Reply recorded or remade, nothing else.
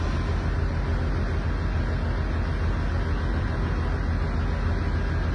recorded